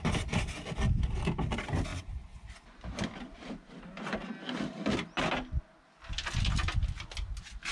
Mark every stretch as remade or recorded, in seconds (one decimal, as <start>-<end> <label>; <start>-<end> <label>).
0.0-7.7 recorded